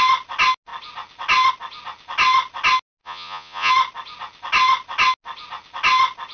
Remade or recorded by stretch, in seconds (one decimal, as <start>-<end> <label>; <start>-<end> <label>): 0.0-3.0 recorded; 3.0-3.7 remade; 3.7-6.3 recorded